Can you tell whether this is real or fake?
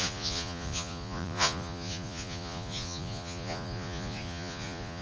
fake